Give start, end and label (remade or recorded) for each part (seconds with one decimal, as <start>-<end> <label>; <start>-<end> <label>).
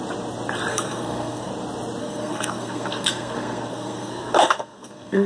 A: 0.0-0.7 recorded; 0.7-1.5 remade; 1.5-2.0 recorded; 2.0-5.3 remade